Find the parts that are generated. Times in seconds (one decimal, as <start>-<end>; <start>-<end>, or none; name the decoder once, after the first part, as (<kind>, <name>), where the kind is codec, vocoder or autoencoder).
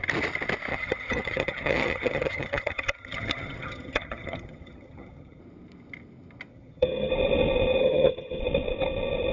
0.7-5.4 (vocoder, HiFi-GAN); 6.5-7.1; 7.8-8.4